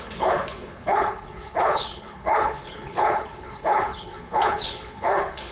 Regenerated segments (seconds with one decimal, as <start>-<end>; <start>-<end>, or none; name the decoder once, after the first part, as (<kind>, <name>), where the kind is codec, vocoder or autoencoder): 0.0-5.5 (codec, HILCodec)